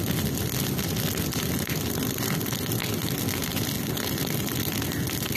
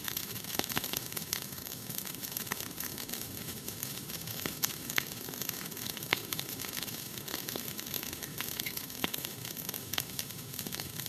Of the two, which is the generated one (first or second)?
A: second